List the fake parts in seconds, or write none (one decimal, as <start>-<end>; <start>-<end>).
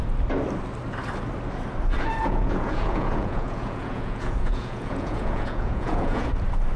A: 2.2-6.3